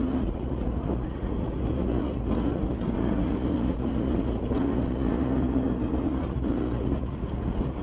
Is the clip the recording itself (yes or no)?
no